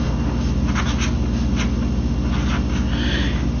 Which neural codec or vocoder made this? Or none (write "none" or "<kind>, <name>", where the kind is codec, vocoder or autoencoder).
none